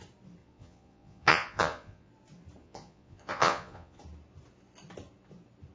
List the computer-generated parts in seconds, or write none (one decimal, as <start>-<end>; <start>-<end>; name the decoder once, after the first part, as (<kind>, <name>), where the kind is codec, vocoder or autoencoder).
0.4-2.1 (vocoder, Vocos); 2.6-4.0